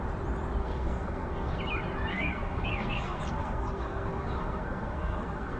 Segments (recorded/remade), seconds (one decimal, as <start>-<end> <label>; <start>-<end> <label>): 0.0-0.6 recorded; 0.6-1.6 remade; 1.6-2.1 recorded; 2.1-5.6 remade